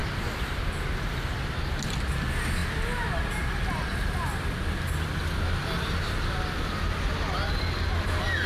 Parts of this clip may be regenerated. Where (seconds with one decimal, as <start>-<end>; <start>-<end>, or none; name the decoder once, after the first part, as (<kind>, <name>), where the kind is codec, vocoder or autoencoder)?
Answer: 0.0-1.2 (vocoder, BigVGAN v2)